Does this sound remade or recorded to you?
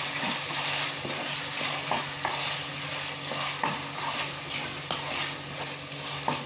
recorded